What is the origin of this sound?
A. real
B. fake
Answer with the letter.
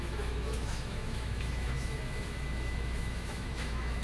B